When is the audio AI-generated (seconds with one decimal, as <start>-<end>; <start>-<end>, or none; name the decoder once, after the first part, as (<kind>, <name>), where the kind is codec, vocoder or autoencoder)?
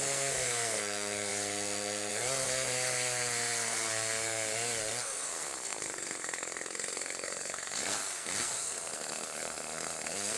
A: 0.0-10.4 (codec, SNAC)